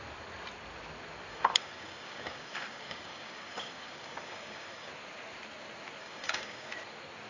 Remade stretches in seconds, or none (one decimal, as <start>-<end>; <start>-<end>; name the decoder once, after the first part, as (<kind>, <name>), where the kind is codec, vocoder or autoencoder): 1.3-4.9 (codec, DAC); 6.0-6.7